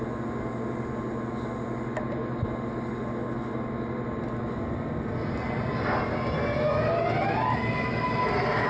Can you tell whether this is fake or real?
real